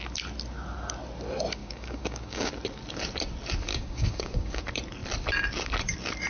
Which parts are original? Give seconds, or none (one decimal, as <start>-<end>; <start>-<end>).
0.0-1.6; 2.5-3.7; 4.6-6.3